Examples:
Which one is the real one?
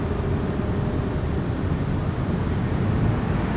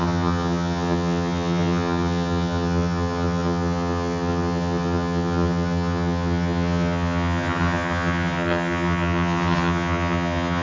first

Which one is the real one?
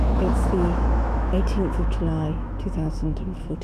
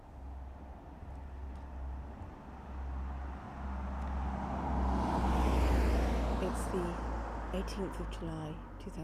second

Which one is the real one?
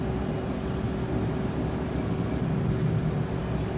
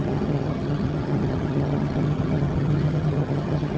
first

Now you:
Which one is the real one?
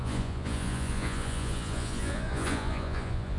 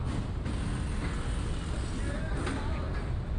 second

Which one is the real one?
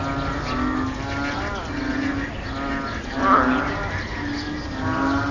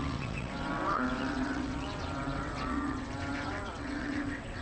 first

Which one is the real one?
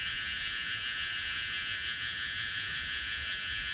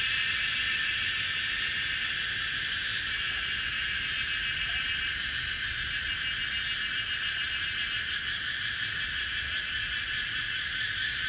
second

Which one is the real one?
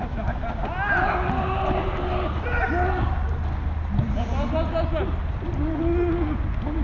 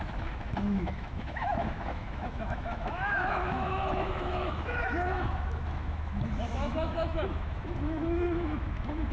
first